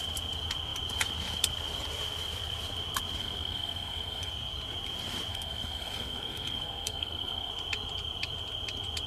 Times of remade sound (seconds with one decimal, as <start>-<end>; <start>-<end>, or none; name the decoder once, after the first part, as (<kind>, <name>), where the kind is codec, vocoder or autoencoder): 3.2-4.3 (codec, SNAC); 5.3-7.5